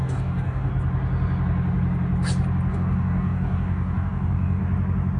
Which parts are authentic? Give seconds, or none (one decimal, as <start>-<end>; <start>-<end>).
0.7-2.7; 4.6-5.2